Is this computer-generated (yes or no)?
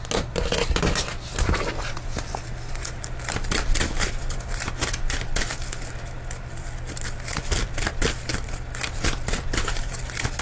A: no